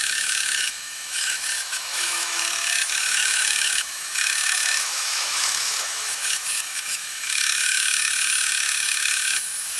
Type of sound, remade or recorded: remade